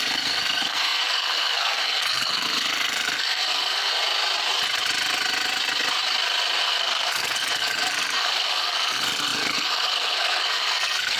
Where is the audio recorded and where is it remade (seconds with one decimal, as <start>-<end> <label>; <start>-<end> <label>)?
0.0-3.9 remade; 3.9-6.6 recorded; 6.6-11.2 remade